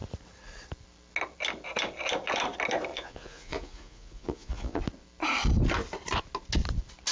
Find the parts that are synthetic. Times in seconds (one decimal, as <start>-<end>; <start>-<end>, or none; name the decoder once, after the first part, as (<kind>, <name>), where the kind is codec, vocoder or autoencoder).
2.9-4.8 (vocoder, Vocos)